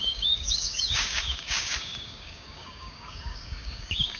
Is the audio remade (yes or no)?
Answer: yes